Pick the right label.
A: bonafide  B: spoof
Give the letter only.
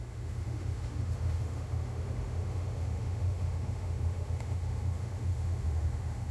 B